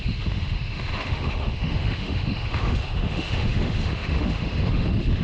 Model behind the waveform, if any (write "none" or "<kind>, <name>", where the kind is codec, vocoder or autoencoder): autoencoder, DAC-VAE